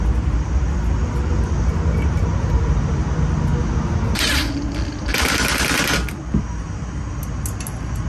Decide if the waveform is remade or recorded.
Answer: recorded